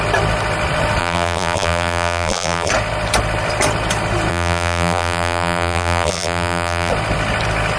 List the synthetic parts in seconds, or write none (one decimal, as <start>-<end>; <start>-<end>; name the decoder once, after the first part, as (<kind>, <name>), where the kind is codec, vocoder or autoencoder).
1.0-2.7 (vocoder, BigVGAN v2); 4.3-6.9